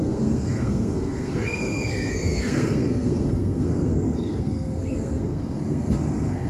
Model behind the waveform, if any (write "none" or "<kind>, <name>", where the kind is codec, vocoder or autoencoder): codec, SNAC